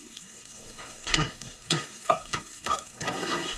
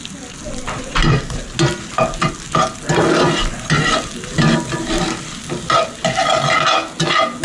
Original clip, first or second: second